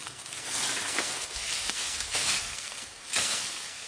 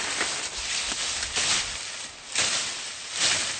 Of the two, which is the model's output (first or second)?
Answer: first